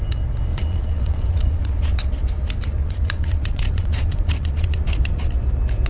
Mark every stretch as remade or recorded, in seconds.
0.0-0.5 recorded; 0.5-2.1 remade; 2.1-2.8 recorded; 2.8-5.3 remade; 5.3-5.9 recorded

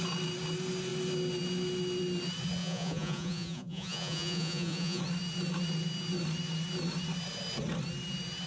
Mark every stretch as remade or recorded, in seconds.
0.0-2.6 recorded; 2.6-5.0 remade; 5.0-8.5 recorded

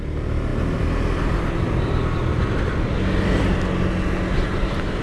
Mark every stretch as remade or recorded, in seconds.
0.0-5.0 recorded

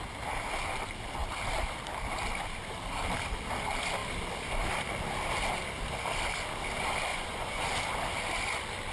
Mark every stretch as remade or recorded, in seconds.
0.0-7.1 recorded; 7.1-7.6 remade; 7.6-8.9 recorded